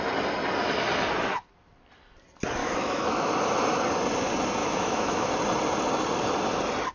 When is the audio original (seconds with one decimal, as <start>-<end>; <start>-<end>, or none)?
0.0-2.6; 3.3-4.6; 5.3-6.9